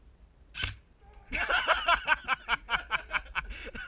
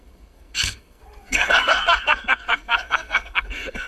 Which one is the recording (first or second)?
first